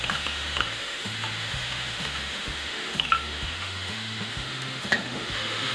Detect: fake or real fake